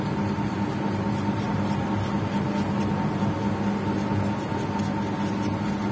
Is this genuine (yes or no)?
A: yes